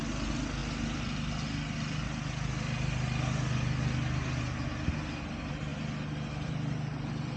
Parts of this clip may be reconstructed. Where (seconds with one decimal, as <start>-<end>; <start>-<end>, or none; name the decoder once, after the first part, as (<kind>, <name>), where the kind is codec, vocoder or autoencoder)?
none